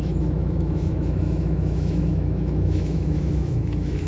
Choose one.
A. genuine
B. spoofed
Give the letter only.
B